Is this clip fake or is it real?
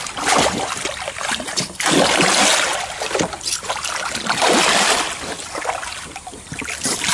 real